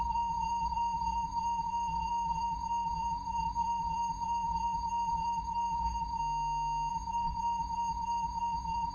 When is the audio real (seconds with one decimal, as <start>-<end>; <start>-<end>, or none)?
6.2-6.9